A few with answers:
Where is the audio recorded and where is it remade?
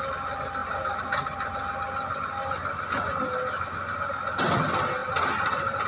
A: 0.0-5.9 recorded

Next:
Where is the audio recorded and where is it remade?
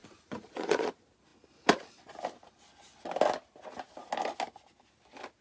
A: 0.0-0.9 remade; 0.9-5.4 recorded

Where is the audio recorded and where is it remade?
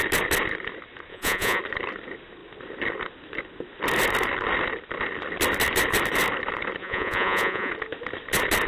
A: 0.0-1.1 recorded; 1.1-1.6 remade; 1.6-6.8 recorded; 6.8-7.7 remade; 7.7-8.7 recorded